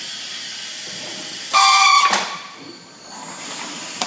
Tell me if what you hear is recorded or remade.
recorded